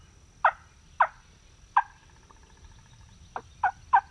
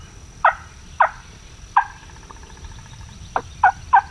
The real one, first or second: first